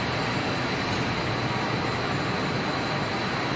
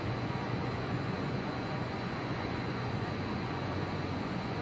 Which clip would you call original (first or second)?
first